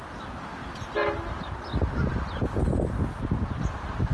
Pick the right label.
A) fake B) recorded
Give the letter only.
B